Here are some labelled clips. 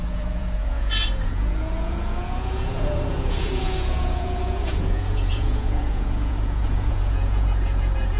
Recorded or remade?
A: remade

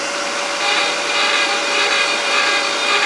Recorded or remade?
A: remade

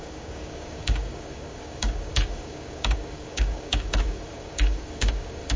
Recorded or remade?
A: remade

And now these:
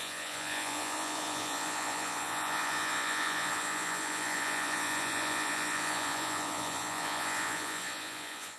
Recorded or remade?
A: remade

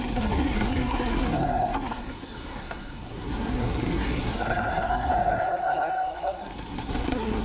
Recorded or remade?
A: remade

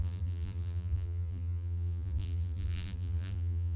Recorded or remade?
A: remade